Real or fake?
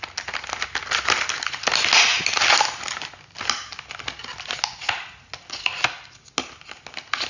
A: real